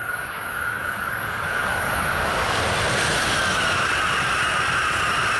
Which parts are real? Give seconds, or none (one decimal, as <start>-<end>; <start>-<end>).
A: 2.6-5.4